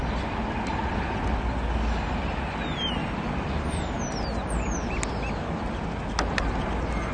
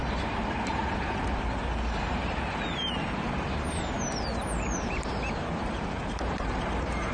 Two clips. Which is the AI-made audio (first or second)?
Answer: second